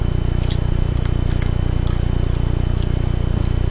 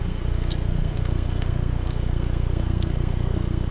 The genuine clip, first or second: first